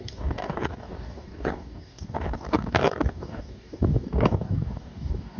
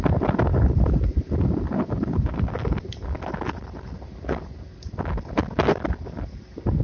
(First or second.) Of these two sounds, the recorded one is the second